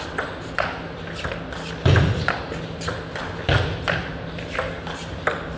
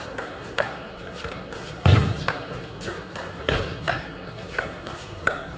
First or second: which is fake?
second